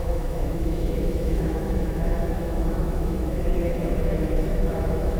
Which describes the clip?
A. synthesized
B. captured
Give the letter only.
A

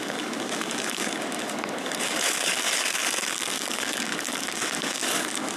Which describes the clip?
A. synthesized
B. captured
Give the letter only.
A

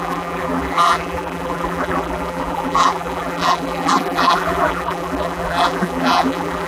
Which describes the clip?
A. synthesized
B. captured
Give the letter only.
A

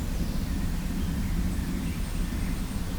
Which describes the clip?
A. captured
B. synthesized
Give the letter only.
A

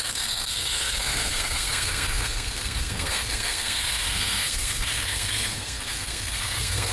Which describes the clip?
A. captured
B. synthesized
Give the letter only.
B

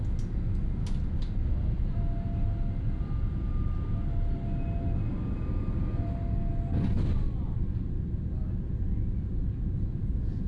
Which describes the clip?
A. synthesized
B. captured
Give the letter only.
B